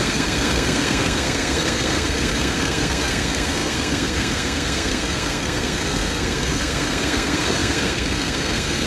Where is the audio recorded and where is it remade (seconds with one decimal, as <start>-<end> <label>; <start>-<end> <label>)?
0.0-8.9 remade